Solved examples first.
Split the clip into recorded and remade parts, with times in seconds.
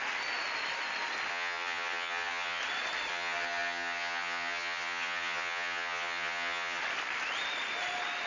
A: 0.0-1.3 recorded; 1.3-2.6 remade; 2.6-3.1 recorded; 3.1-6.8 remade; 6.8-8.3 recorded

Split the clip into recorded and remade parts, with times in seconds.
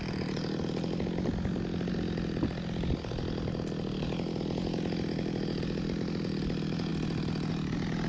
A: 0.0-8.1 recorded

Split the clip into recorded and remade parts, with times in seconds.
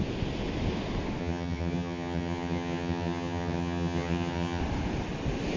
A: 0.0-1.2 recorded; 1.2-4.6 remade; 4.6-5.6 recorded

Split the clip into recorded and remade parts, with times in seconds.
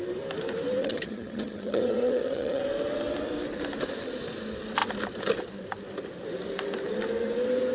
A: 0.0-0.8 recorded; 0.8-2.6 remade; 2.6-7.7 recorded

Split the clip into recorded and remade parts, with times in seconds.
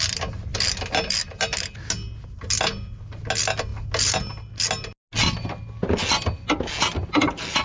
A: 0.0-7.6 recorded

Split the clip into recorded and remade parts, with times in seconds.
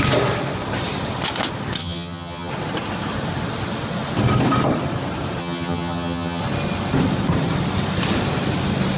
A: 0.0-1.8 recorded; 1.8-2.5 remade; 2.5-5.4 recorded; 5.4-6.4 remade; 6.4-9.0 recorded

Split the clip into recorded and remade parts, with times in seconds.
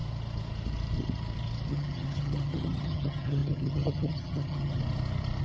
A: 0.0-1.7 recorded; 1.7-4.8 remade; 4.8-5.4 recorded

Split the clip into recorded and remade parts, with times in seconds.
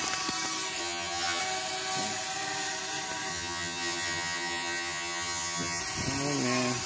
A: 0.0-0.8 recorded; 0.8-1.4 remade; 1.4-3.3 recorded; 3.3-5.8 remade; 5.8-6.9 recorded